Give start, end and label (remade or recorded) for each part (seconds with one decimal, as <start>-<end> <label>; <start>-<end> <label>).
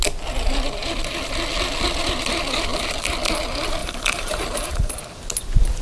0.0-3.8 recorded; 3.8-5.0 remade; 5.0-5.8 recorded